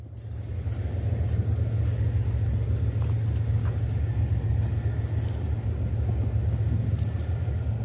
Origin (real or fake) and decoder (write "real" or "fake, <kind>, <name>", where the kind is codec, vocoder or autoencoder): real